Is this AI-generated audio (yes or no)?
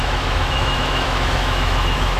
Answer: yes